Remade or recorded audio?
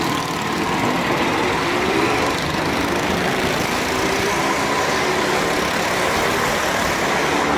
recorded